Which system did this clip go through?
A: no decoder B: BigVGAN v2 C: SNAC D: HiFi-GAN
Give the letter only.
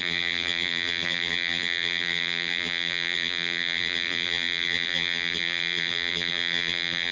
B